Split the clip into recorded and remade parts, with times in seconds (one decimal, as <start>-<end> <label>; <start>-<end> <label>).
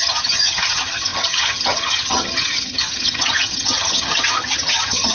0.0-5.1 remade